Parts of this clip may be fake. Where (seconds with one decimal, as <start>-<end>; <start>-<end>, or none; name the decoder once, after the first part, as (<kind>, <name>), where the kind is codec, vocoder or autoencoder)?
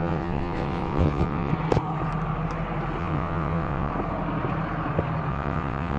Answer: 0.0-1.5 (vocoder, WaveNeXt); 3.0-3.9; 5.3-6.0